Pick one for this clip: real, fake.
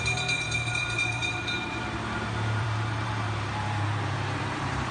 fake